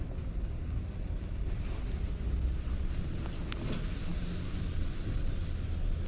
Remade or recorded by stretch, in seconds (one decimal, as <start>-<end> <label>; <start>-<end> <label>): 0.0-6.1 recorded

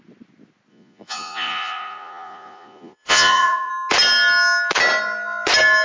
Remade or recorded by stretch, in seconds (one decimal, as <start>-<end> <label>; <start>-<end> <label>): 0.0-0.7 recorded; 0.7-3.7 remade; 3.7-5.8 recorded

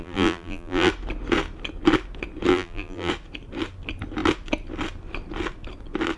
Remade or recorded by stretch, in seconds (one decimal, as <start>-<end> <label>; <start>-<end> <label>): 0.0-0.9 remade; 0.9-2.5 recorded; 2.5-3.1 remade; 3.1-6.2 recorded

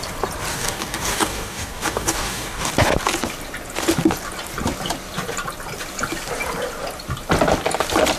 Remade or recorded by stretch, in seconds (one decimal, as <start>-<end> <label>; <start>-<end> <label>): 0.0-0.5 recorded; 0.5-2.7 remade; 2.7-8.2 recorded